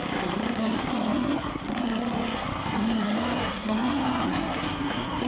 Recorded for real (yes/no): no